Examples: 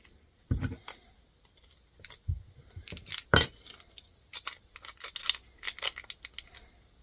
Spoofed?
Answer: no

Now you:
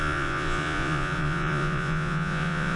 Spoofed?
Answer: yes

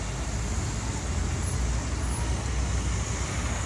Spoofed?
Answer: no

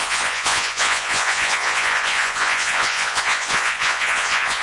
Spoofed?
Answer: yes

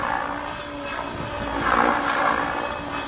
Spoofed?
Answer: no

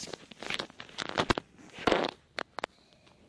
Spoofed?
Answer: no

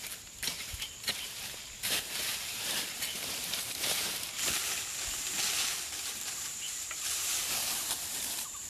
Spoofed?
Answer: yes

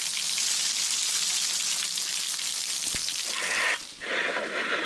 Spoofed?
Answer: no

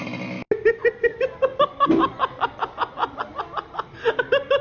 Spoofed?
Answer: no